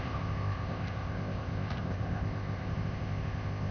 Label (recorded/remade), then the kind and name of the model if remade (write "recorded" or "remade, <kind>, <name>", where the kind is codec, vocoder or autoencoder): remade, codec, ZipCodec